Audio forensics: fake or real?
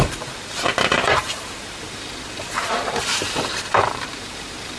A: fake